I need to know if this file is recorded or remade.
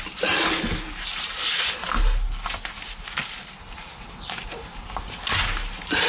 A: recorded